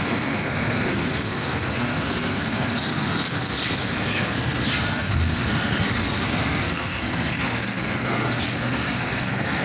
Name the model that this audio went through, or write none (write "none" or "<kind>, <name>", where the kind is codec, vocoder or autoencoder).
codec, SNAC